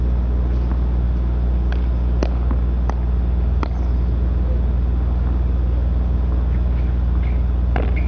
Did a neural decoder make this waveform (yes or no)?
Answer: no